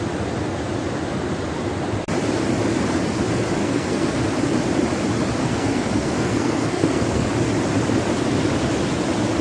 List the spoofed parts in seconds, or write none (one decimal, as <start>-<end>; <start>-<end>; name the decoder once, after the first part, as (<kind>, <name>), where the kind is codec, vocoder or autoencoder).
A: 3.6-4.2 (codec, SNAC); 5.4-7.3